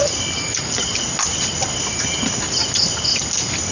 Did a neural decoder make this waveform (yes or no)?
no